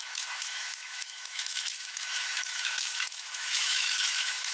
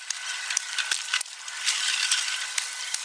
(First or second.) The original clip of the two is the second